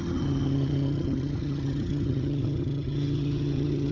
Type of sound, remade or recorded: remade